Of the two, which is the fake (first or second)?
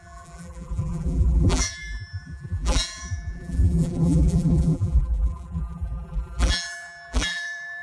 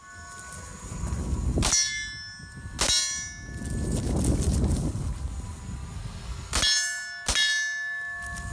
first